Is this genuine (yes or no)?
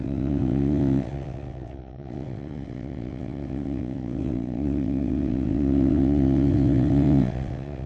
no